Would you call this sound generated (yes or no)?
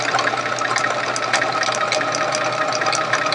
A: no